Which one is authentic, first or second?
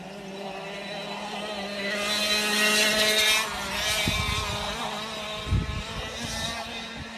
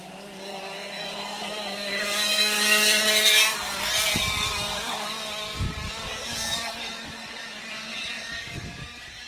first